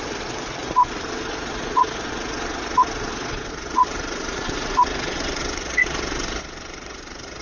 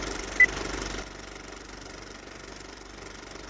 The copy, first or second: first